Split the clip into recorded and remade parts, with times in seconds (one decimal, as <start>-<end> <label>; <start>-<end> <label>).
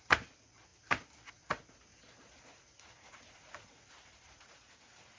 0.0-1.9 recorded; 1.9-5.2 remade